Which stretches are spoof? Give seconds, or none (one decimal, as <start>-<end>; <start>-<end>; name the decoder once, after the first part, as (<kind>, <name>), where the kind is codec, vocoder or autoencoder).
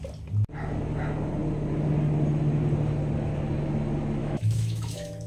4.2-5.3 (autoencoder, DAC-VAE)